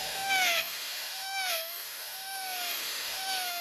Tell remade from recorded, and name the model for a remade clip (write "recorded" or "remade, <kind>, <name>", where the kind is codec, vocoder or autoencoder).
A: remade, autoencoder, DAC-VAE